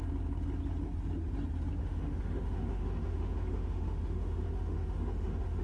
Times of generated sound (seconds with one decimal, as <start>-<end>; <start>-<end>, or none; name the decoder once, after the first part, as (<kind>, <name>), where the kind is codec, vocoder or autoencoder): 1.8-5.6 (autoencoder, DAC-VAE)